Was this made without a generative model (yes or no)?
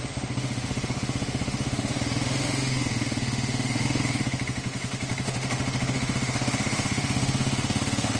no